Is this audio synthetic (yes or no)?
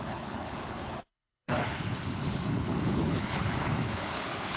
yes